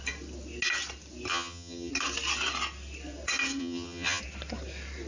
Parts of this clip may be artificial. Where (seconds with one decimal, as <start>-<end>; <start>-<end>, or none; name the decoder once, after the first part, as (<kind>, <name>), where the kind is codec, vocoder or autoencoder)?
1.3-1.9 (vocoder, HiFi-GAN); 3.6-4.2